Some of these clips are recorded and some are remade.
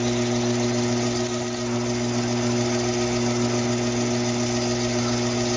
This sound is recorded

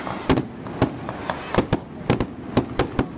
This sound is recorded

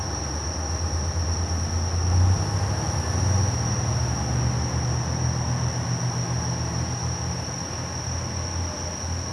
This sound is recorded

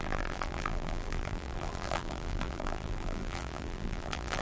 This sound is remade